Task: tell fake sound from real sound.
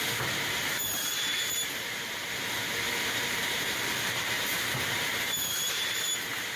fake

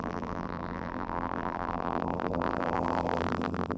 fake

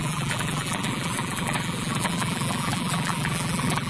fake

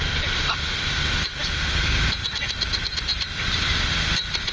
fake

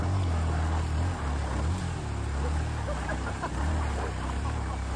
real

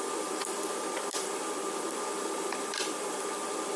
fake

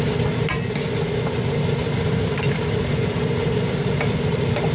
real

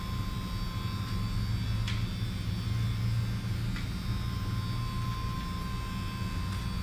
real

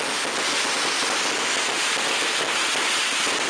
real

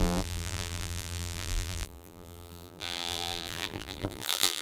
fake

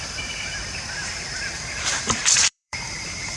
fake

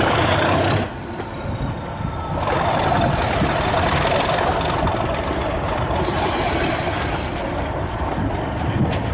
fake